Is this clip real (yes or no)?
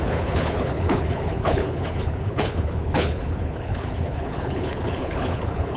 no